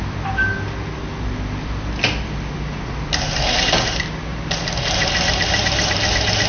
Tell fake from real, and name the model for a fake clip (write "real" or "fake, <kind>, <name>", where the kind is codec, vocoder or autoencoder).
real